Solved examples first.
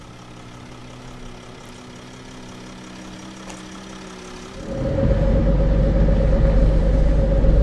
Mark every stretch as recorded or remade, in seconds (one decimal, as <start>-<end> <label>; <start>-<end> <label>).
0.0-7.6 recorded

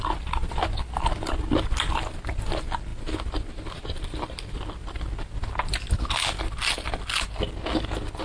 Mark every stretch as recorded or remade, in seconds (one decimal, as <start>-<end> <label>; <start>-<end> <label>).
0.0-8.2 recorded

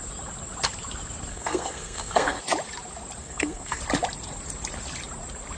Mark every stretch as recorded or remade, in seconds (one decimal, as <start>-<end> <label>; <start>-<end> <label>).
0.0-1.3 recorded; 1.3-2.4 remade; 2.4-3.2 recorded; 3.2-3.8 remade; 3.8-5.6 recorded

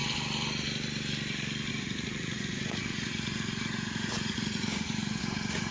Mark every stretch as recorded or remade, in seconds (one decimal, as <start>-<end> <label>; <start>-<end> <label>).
0.0-1.7 recorded; 1.7-5.7 remade

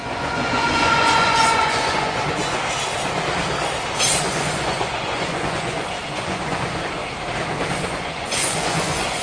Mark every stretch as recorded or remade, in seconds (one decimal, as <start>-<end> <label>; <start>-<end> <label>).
0.0-2.6 remade; 2.6-4.2 recorded; 4.2-7.0 remade; 7.0-7.9 recorded; 7.9-9.2 remade